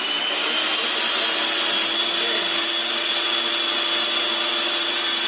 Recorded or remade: recorded